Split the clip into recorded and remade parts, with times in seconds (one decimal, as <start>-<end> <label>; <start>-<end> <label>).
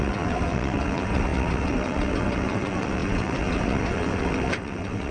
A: 0.0-5.1 remade